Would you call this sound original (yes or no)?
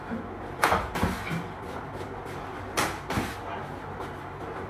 yes